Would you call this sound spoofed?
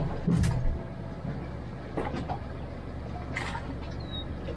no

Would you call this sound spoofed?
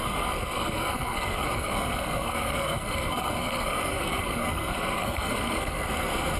yes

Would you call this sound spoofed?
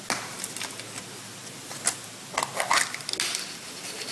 no